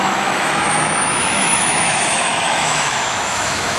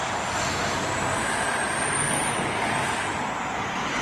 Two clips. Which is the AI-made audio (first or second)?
first